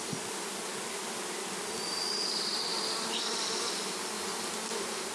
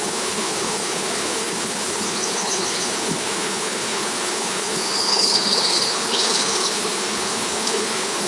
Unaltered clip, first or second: first